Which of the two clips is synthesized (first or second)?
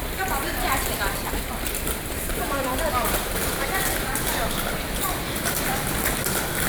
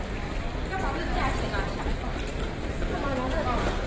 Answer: first